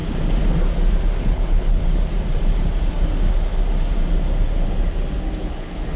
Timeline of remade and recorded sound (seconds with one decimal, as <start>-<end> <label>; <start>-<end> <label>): 0.0-1.2 recorded; 1.2-1.8 remade; 1.8-5.4 recorded; 5.4-6.0 remade